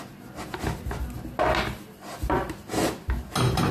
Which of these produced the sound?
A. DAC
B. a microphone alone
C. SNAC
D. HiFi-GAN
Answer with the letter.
B